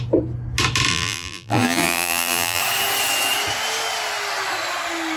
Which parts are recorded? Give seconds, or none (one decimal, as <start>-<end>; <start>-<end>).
0.0-0.9; 2.6-5.2